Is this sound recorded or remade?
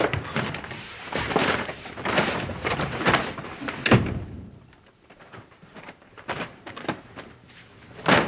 remade